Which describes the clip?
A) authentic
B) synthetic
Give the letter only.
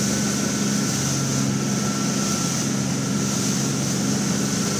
A